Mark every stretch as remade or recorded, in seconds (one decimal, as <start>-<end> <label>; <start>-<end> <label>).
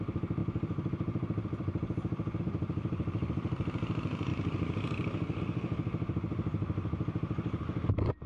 0.0-8.3 recorded